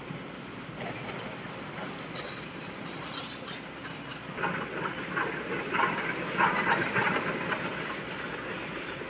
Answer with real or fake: real